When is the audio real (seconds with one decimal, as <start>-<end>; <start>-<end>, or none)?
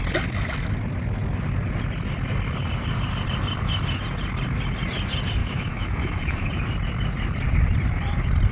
0.0-5.4; 6.5-8.5